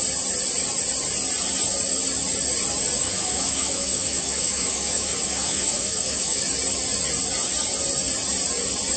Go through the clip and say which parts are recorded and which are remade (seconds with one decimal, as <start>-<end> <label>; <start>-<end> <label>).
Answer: 0.0-3.0 recorded; 3.0-6.4 remade; 6.4-9.0 recorded